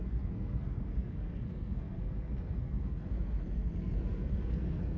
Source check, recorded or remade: remade